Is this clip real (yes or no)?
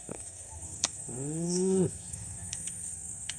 no